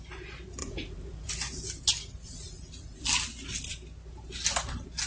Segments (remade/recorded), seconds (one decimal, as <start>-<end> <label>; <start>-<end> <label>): 0.0-0.6 recorded; 0.6-1.3 remade; 1.3-2.0 recorded; 2.0-3.0 remade; 3.0-5.1 recorded